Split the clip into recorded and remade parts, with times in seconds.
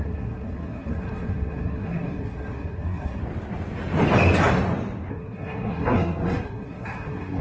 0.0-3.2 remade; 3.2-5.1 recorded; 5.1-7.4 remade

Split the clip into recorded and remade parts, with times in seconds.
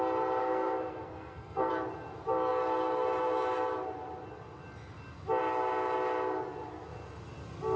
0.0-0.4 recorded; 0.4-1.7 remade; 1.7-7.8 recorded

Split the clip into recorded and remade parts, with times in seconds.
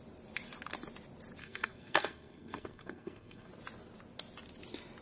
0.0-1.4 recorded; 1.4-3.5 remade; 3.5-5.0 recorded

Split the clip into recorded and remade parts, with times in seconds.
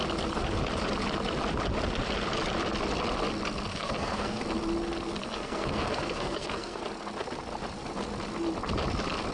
0.0-3.7 recorded; 3.7-4.4 remade; 4.4-5.2 recorded; 5.2-6.8 remade; 6.8-9.3 recorded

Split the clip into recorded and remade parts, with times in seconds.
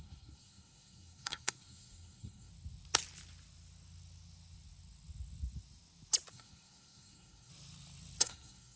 0.0-2.5 remade; 2.5-6.3 recorded; 6.3-7.5 remade; 7.5-8.2 recorded; 8.2-8.8 remade